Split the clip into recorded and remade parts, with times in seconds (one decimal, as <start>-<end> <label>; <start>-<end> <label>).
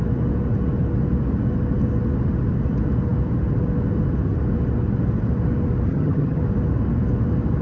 0.0-5.9 recorded; 5.9-6.4 remade; 6.4-7.6 recorded